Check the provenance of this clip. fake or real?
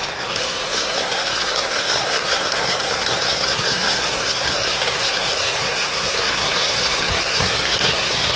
fake